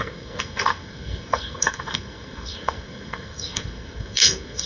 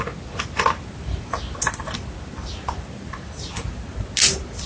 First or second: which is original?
second